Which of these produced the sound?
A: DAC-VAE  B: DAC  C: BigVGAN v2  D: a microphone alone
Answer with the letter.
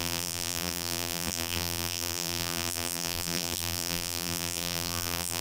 C